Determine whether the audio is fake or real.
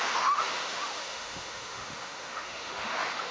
fake